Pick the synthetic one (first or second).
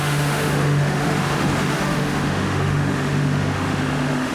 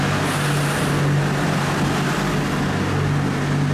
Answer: first